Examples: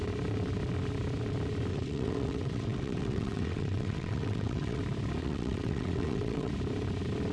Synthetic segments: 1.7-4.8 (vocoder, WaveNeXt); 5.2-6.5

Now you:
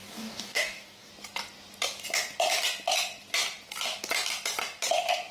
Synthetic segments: 0.0-1.1 (codec, DAC)

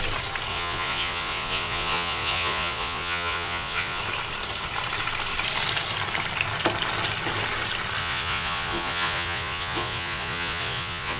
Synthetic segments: 0.5-4.0 (vocoder, Vocos); 8.0-11.2